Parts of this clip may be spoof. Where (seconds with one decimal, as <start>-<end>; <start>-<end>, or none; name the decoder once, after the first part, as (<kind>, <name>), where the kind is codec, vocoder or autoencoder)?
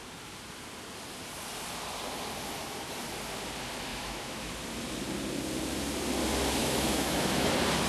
3.9-4.5 (autoencoder, DAC-VAE); 6.6-7.5